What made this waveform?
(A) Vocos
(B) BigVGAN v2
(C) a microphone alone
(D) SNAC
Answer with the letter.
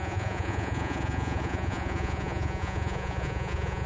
A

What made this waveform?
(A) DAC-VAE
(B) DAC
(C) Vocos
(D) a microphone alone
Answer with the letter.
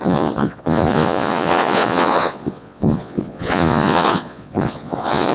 C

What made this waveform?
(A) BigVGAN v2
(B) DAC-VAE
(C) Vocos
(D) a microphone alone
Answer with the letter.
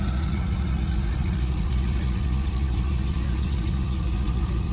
C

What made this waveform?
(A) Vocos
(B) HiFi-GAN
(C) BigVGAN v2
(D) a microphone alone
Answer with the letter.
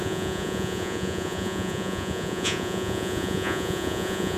A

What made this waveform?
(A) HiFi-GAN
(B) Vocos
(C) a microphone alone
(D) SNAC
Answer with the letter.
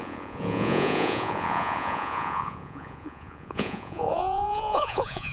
B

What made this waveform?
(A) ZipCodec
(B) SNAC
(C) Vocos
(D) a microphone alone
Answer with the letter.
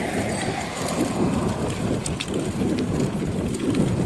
D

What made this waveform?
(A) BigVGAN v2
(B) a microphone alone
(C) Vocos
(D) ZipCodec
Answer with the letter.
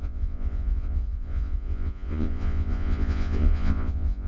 C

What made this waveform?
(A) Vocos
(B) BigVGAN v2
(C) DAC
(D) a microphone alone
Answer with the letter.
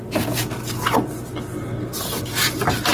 D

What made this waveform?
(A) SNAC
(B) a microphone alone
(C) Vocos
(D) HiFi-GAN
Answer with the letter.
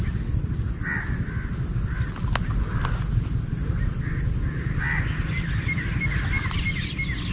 B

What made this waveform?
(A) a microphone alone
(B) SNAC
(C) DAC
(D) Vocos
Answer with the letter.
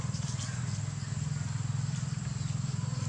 A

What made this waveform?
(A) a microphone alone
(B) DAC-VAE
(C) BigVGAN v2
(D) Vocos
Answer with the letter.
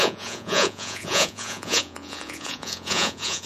D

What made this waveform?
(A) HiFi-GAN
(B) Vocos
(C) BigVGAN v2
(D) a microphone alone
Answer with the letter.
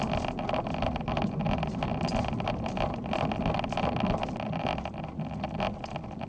D